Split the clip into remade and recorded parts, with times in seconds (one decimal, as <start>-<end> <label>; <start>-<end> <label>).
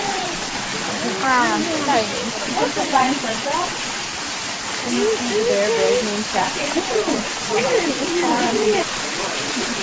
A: 0.0-0.7 remade; 0.7-2.3 recorded; 2.3-4.1 remade; 4.1-6.4 recorded; 6.4-9.8 remade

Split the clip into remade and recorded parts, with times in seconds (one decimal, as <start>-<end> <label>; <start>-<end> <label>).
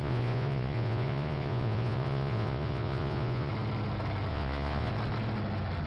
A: 0.0-3.5 remade; 3.5-4.3 recorded; 4.3-4.9 remade; 4.9-5.9 recorded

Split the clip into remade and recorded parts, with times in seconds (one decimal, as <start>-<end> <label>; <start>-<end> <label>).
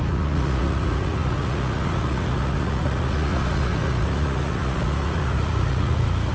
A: 0.0-6.3 remade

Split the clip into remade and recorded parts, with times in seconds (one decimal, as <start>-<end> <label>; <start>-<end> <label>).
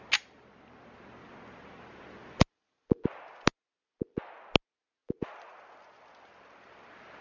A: 0.0-7.2 recorded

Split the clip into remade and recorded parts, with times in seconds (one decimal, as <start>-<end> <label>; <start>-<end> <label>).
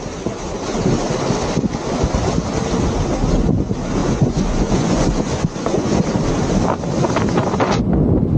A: 0.0-4.0 recorded; 4.0-6.0 remade; 6.0-8.4 recorded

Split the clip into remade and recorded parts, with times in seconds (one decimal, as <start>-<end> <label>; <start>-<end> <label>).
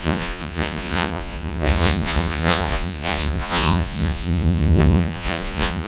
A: 0.0-5.9 remade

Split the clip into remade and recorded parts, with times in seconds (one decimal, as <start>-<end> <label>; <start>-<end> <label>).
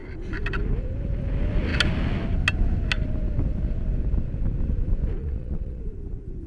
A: 0.0-5.2 recorded; 5.2-5.8 remade; 5.8-6.5 recorded